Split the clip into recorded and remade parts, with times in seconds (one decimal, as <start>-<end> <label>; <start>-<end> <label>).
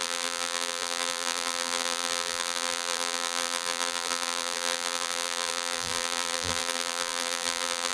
0.0-7.9 remade